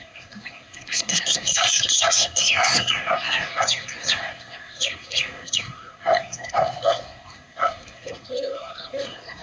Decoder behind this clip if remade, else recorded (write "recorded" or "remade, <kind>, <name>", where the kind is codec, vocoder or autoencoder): remade, codec, SNAC